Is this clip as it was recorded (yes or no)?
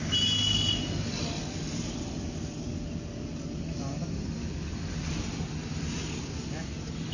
yes